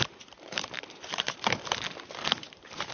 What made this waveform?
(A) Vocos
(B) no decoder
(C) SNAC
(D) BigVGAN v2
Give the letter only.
D